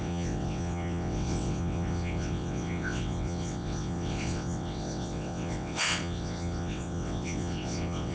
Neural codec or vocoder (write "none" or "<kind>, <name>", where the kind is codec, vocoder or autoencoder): vocoder, WaveNeXt